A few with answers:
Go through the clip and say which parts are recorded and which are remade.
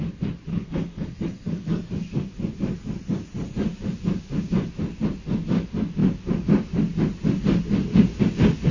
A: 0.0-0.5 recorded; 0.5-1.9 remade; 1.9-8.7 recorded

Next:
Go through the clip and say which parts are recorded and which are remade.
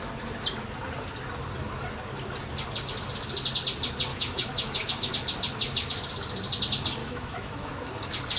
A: 0.0-4.1 recorded; 4.1-5.1 remade; 5.1-7.0 recorded; 7.0-7.9 remade; 7.9-8.4 recorded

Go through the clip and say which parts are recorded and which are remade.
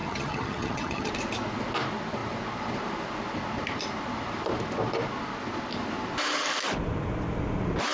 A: 0.0-1.1 remade; 1.1-7.9 recorded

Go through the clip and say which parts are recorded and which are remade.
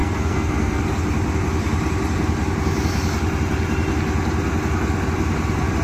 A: 0.0-0.8 remade; 0.8-5.8 recorded